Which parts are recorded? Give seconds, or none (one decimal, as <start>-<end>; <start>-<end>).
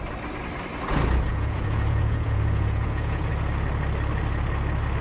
0.0-1.3; 3.3-5.0